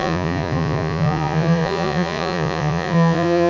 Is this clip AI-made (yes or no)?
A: yes